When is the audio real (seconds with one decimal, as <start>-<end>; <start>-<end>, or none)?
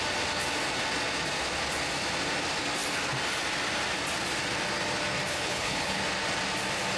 0.0-5.3; 6.0-7.0